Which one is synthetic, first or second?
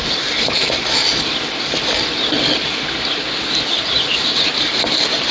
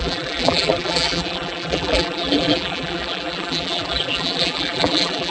second